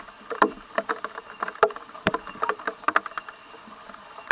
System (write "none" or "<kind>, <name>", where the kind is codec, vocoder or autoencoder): vocoder, BigVGAN v2